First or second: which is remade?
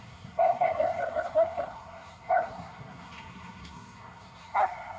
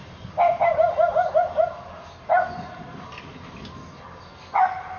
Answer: first